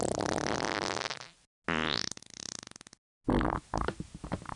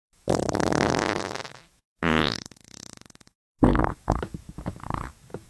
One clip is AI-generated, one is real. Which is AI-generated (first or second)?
second